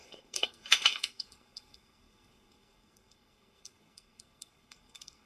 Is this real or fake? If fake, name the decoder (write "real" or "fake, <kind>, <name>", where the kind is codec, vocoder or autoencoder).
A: fake, codec, SNAC